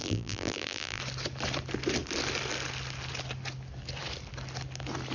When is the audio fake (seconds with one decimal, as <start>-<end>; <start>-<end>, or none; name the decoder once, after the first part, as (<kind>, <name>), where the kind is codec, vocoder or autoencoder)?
0.0-1.0 (vocoder, BigVGAN v2)